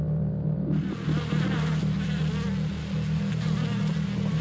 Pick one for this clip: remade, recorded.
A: recorded